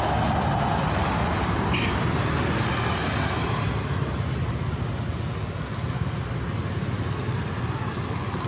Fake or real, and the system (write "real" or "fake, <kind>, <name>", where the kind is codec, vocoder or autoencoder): real